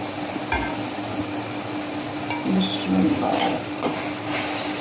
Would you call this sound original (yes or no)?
yes